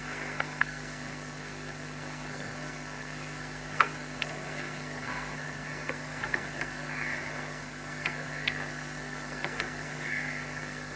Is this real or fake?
fake